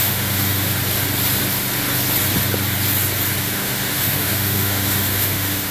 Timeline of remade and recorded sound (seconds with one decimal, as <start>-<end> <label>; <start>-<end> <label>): 0.0-0.7 remade; 0.7-3.4 recorded; 3.4-5.7 remade